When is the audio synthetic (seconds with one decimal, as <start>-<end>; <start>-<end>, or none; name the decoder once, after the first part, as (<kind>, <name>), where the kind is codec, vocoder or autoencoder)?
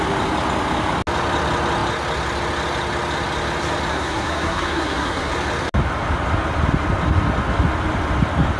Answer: 3.9-5.3 (codec, SNAC)